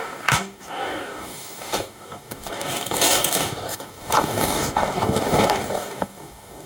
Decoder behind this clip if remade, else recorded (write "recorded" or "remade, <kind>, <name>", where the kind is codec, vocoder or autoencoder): remade, codec, DAC